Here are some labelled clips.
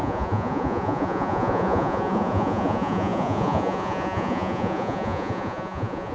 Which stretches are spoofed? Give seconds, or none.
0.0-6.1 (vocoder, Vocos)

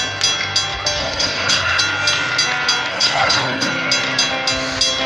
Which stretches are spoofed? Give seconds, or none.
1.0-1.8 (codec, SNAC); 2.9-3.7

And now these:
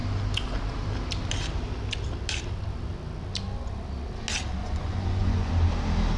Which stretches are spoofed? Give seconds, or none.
4.6-5.5 (vocoder, Vocos)

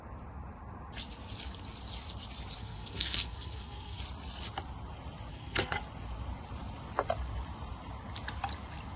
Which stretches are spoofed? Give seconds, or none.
2.6-4.0 (codec, SNAC); 5.3-5.8

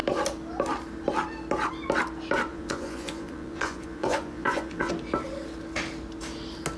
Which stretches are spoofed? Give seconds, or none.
2.5-4.9 (vocoder, Vocos)

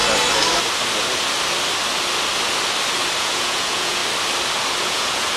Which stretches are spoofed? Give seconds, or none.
3.2-4.0 (vocoder, Vocos); 4.8-5.4

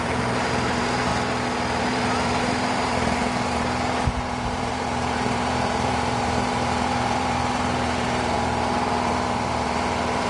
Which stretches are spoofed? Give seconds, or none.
0.0-1.1 (vocoder, BigVGAN v2); 1.8-10.3

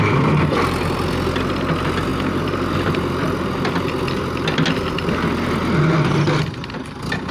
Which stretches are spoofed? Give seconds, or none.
2.1-3.5 (vocoder, BigVGAN v2)